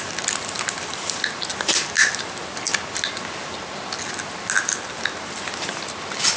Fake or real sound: real